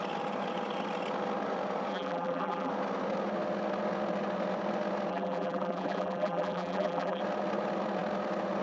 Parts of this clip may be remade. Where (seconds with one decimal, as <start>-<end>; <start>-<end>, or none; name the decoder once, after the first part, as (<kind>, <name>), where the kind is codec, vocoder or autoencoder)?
1.9-2.7 (vocoder, BigVGAN v2); 5.1-7.2